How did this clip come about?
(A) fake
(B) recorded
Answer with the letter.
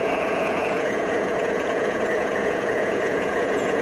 A